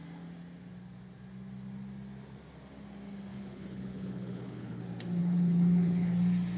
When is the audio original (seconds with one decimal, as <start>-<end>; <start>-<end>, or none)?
0.0-3.3; 4.8-5.2; 6.1-6.6